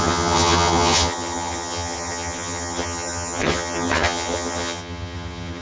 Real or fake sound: fake